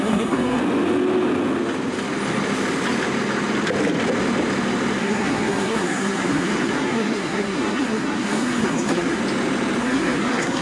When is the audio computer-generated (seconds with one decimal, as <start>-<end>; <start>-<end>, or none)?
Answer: 0.0-0.6; 5.0-9.2; 9.8-10.6